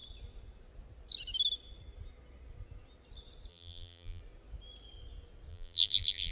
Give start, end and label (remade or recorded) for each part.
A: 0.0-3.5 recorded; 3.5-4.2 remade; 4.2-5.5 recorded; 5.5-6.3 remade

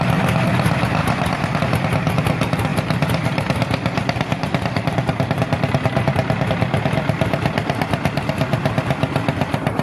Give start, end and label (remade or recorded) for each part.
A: 0.0-1.0 recorded; 1.0-1.6 remade; 1.6-2.7 recorded; 2.7-6.5 remade; 6.5-9.8 recorded

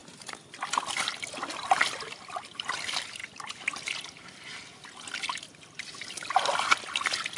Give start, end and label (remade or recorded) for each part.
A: 0.0-7.4 recorded

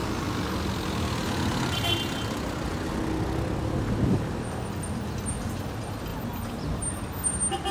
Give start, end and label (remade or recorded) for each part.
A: 0.0-6.1 recorded; 6.1-6.8 remade; 6.8-7.7 recorded